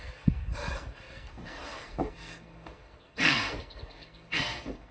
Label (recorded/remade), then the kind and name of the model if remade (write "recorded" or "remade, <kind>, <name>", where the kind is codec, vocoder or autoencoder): remade, codec, SNAC